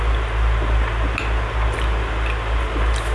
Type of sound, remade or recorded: recorded